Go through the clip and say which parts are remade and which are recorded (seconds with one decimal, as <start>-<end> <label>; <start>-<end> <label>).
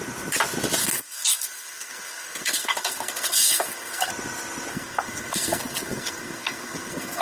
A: 0.0-0.8 recorded; 0.8-4.1 remade; 4.1-4.7 recorded; 4.7-7.2 remade